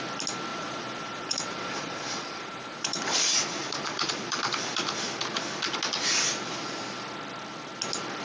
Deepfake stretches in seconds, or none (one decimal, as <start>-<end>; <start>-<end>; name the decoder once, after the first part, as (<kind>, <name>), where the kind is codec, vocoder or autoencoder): 0.5-4.4 (vocoder, Vocos)